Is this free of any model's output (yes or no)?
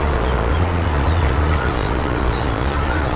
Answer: no